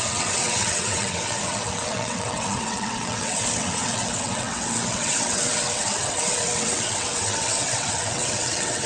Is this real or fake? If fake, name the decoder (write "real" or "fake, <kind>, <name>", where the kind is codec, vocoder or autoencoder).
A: fake, vocoder, WaveNeXt